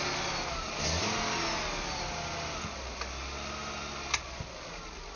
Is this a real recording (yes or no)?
yes